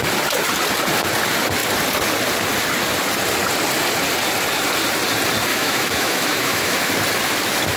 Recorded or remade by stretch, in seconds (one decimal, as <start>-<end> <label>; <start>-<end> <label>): 0.0-5.5 recorded; 5.5-6.9 remade; 6.9-7.8 recorded

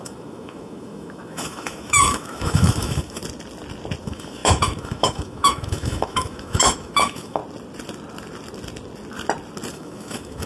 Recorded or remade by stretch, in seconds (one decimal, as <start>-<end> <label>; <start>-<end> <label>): 0.0-3.2 remade; 3.2-4.0 recorded; 4.0-7.4 remade; 7.4-9.7 recorded; 9.7-10.5 remade

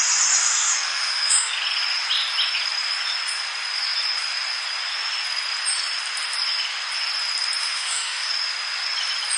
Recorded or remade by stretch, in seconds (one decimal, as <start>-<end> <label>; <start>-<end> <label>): 0.0-0.4 recorded; 0.4-1.5 remade; 1.5-7.6 recorded; 7.6-8.3 remade; 8.3-9.4 recorded

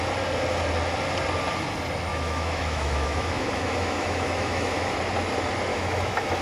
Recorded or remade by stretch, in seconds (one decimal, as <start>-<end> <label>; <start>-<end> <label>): 0.0-2.1 recorded; 2.1-5.0 remade; 5.0-5.7 recorded; 5.7-6.4 remade

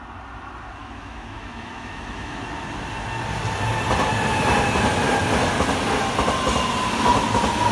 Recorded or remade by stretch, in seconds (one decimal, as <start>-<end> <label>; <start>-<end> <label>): 0.0-0.8 recorded; 0.8-2.4 remade; 2.4-7.7 recorded

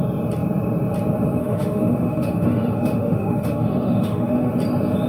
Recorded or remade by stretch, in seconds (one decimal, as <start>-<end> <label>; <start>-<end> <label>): 0.0-1.4 recorded; 1.4-4.5 remade; 4.5-5.1 recorded

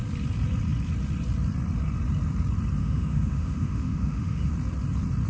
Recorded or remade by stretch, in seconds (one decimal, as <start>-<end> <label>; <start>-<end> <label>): 0.0-2.8 recorded; 2.8-4.5 remade; 4.5-5.3 recorded

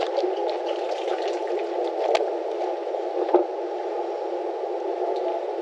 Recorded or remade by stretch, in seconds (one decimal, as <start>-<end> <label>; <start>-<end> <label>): 0.0-5.6 recorded